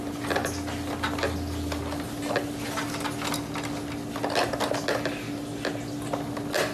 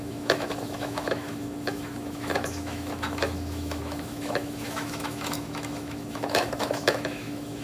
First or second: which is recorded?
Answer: first